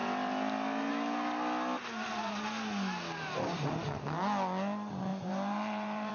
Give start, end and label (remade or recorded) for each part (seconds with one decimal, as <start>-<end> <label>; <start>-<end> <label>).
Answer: 0.0-5.1 recorded; 5.1-6.1 remade